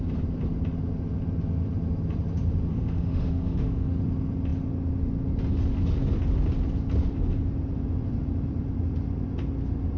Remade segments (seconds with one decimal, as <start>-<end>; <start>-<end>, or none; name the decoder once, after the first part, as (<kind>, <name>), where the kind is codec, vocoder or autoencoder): 2.7-4.0 (autoencoder, DAC-VAE)